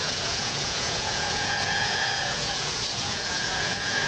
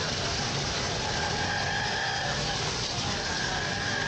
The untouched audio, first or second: second